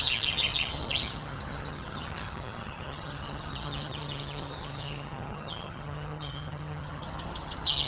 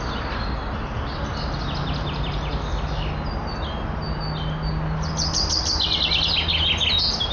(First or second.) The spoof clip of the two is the first